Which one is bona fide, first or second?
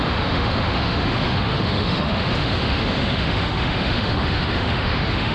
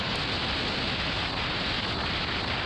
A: second